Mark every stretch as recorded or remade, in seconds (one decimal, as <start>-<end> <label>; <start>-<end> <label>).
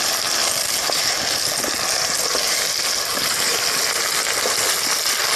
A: 0.0-5.4 recorded